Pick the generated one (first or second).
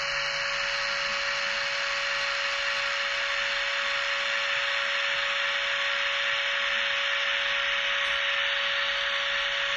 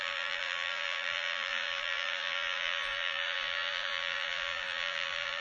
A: second